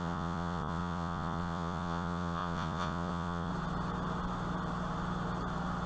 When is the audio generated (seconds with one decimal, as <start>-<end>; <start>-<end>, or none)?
0.0-3.5